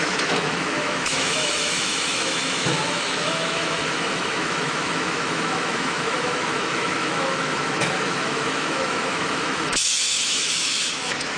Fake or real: fake